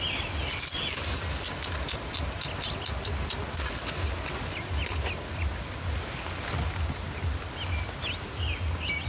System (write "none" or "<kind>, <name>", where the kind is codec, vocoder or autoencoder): none